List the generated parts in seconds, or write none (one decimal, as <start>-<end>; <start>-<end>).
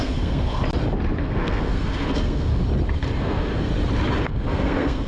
0.0-0.6; 1.2-2.6; 3.2-3.7; 4.2-5.1